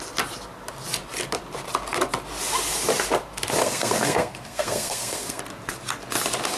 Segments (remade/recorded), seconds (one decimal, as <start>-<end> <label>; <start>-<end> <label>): 0.0-3.6 recorded; 3.6-5.4 remade; 5.4-6.6 recorded

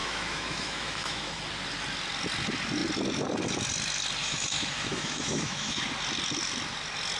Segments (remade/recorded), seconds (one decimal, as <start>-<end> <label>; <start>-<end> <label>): 0.0-1.4 remade; 1.4-4.2 recorded; 4.2-5.8 remade; 5.8-7.2 recorded